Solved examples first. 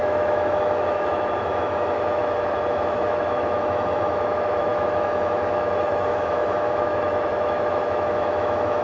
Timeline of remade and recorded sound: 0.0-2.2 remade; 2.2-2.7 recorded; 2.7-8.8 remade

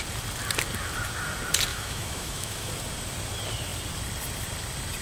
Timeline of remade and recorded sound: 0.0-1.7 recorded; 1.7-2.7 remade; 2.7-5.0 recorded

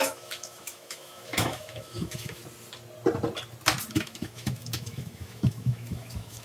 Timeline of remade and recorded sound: 0.0-2.4 remade; 2.4-3.9 recorded; 3.9-6.4 remade

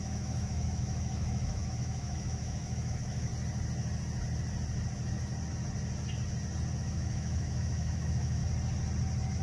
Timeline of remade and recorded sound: 0.0-3.3 remade; 3.3-6.8 recorded; 6.8-8.4 remade; 8.4-9.4 recorded